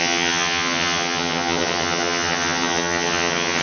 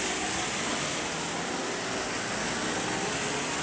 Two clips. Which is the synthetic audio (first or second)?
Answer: first